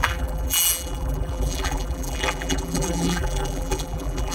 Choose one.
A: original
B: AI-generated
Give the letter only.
B